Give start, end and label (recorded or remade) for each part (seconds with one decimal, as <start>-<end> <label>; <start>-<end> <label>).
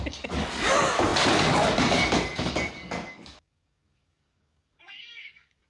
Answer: 0.0-5.7 remade